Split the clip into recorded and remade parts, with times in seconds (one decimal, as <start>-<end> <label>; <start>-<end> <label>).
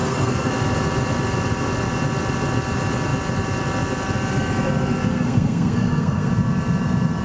0.0-0.5 remade; 0.5-5.1 recorded; 5.1-6.3 remade; 6.3-7.2 recorded